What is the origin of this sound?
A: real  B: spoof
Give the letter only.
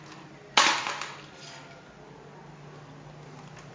A